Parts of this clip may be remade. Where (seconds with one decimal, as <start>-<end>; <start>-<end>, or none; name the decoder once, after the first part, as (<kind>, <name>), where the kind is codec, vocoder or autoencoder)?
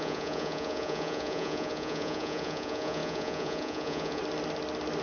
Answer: 0.0-4.2 (vocoder, Vocos)